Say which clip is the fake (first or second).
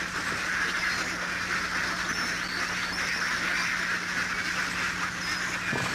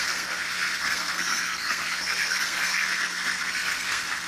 second